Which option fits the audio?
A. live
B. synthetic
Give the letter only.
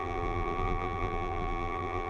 B